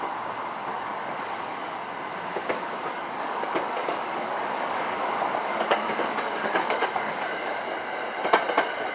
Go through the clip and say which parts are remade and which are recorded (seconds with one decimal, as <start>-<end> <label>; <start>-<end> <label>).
0.0-0.7 recorded; 0.7-1.8 remade; 1.8-2.3 recorded; 2.3-7.5 remade; 7.5-8.9 recorded